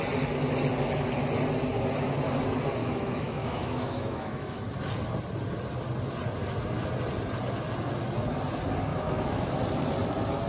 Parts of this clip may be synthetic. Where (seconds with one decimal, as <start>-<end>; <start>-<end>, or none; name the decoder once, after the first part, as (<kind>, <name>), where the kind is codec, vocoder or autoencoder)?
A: 2.8-4.6 (autoencoder, DAC-VAE); 8.9-9.6